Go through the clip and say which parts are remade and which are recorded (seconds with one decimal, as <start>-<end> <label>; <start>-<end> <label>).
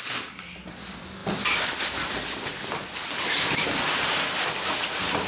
0.0-1.2 recorded; 1.2-4.4 remade; 4.4-5.3 recorded